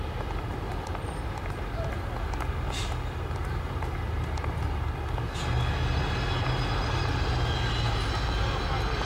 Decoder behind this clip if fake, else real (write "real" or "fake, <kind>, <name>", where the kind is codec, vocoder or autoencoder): real